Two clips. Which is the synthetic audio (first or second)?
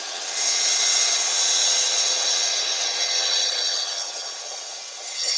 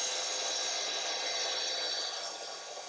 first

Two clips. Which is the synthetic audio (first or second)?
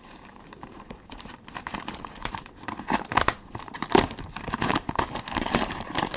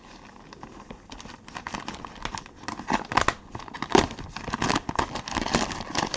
first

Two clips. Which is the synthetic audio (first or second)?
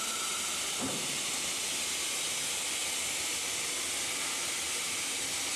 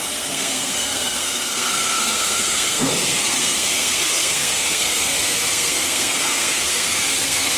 second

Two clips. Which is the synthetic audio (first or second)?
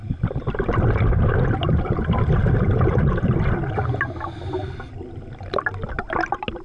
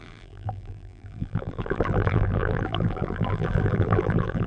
second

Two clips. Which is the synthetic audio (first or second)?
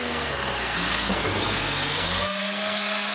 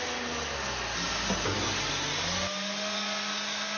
first